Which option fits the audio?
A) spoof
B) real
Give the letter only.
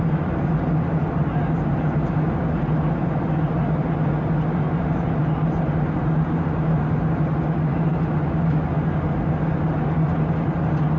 B